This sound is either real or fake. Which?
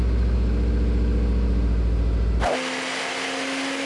real